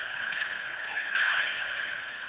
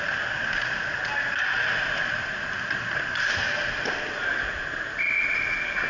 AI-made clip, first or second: first